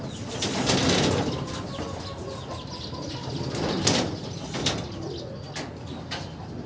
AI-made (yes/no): no